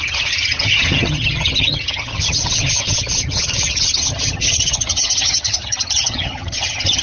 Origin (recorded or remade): remade